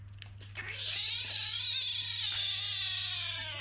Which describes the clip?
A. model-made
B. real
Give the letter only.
B